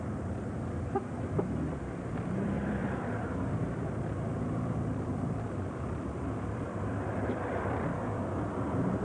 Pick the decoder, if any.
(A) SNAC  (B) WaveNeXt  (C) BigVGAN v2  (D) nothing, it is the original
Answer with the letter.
C